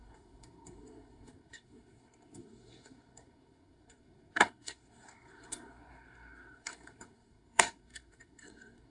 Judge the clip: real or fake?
fake